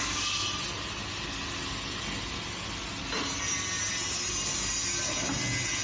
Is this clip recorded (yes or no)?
yes